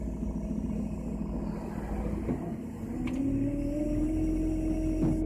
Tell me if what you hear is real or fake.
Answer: real